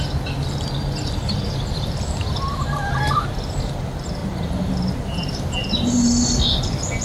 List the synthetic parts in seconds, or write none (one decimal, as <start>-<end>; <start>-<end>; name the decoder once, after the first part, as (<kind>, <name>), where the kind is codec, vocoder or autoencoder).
4.2-5.4 (vocoder, BigVGAN v2)